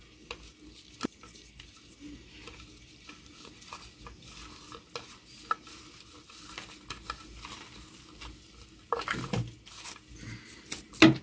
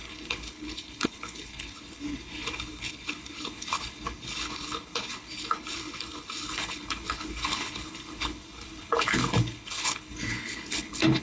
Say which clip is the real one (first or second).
first